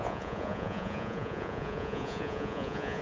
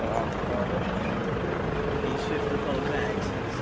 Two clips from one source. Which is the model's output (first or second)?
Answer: first